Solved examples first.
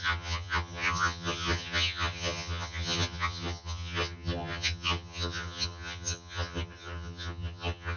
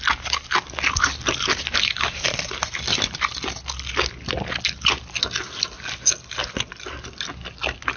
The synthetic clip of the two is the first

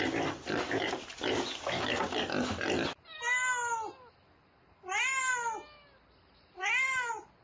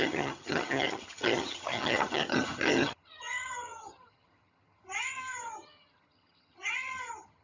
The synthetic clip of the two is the second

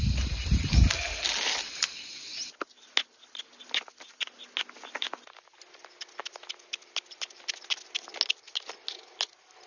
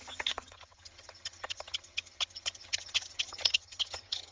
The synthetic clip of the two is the second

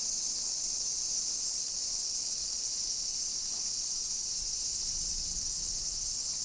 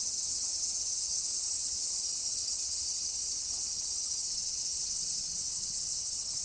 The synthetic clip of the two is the second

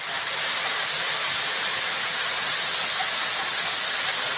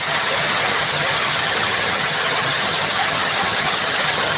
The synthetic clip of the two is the second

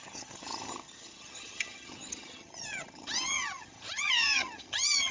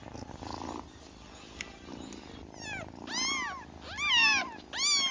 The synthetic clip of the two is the first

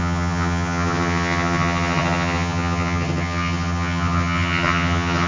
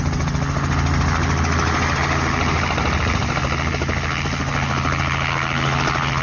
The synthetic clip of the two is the first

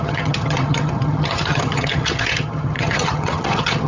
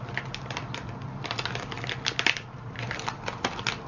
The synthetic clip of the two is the first